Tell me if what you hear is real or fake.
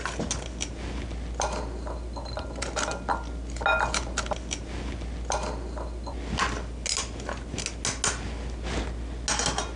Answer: real